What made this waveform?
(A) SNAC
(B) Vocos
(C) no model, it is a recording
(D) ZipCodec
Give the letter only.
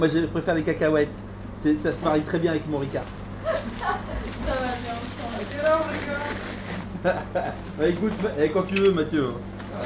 C